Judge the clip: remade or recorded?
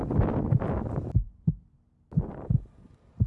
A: recorded